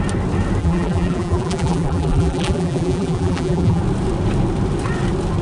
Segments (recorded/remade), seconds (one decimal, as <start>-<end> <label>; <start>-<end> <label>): 0.0-0.6 recorded; 0.6-3.8 remade; 3.8-5.4 recorded